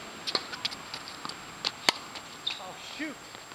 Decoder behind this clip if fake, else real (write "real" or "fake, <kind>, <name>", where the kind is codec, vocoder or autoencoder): real